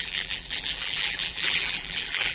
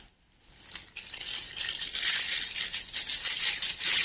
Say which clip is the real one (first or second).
second